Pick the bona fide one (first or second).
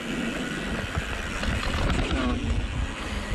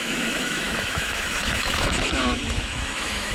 first